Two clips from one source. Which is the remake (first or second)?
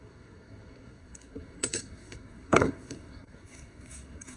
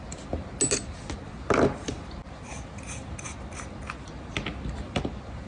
first